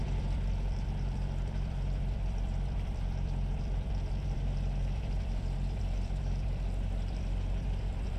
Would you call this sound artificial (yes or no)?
yes